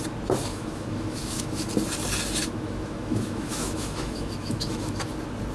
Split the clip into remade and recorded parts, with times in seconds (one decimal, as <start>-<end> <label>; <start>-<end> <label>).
0.0-0.5 recorded; 0.5-1.7 remade; 1.7-2.4 recorded; 2.4-5.1 remade; 5.1-5.5 recorded